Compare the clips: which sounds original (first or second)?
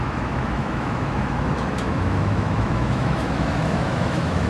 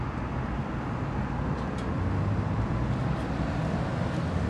second